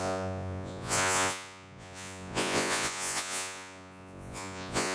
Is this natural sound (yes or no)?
no